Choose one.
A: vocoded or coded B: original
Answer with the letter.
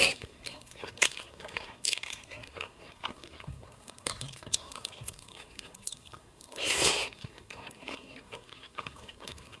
A